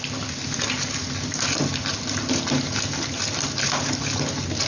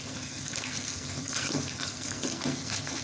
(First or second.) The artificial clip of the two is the second